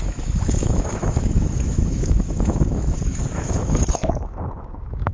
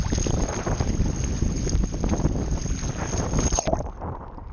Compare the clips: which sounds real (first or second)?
second